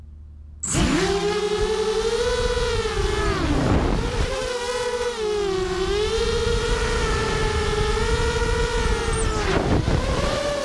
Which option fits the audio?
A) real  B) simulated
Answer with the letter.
A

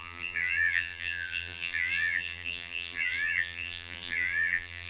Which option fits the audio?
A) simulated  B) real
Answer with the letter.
A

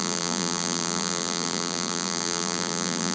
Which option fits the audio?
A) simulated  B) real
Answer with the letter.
A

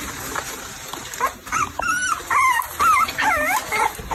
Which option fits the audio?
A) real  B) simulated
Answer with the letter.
B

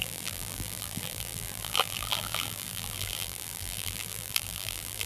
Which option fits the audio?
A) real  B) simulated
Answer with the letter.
B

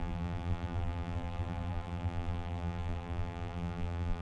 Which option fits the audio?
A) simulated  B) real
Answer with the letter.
A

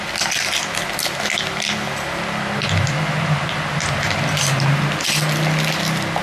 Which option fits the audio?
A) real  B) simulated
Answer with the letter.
A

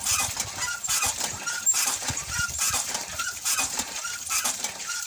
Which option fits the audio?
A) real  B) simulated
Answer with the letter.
B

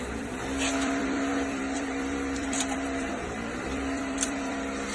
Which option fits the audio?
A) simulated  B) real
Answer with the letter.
A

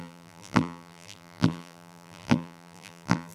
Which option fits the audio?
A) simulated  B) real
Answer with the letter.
A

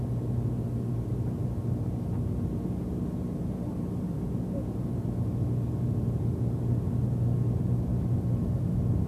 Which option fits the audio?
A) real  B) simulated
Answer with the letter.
A